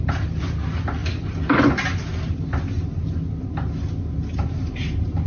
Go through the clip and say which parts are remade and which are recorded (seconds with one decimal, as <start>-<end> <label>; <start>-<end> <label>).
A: 0.0-5.3 recorded